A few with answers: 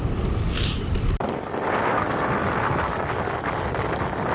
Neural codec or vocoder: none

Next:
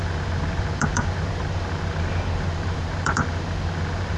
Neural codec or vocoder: vocoder, BigVGAN v2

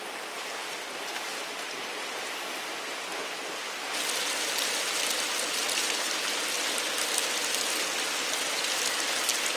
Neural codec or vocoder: none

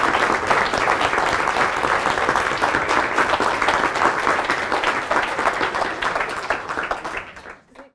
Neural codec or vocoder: none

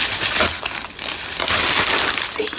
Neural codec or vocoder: none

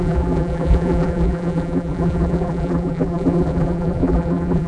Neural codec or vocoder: vocoder, BigVGAN v2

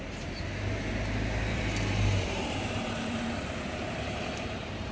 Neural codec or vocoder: vocoder, BigVGAN v2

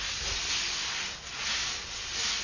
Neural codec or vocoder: none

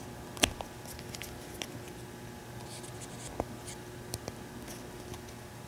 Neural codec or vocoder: none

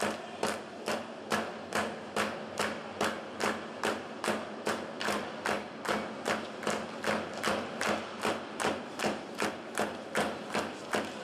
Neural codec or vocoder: vocoder, BigVGAN v2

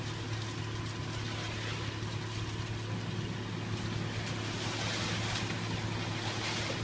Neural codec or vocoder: none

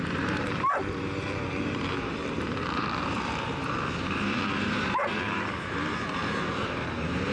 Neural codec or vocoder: vocoder, BigVGAN v2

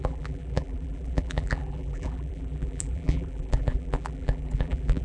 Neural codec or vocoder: vocoder, BigVGAN v2